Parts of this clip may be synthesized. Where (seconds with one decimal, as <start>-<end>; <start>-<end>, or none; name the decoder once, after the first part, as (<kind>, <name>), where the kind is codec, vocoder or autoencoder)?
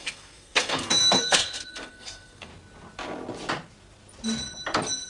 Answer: 0.0-2.5 (codec, SNAC)